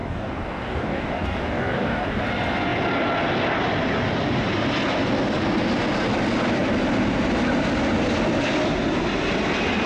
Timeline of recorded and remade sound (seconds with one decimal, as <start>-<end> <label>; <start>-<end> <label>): 0.0-2.2 remade; 2.2-9.9 recorded